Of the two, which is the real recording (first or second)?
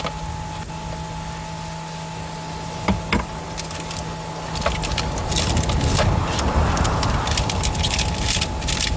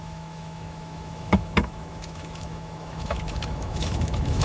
first